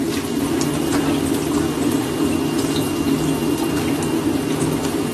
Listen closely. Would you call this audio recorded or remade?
recorded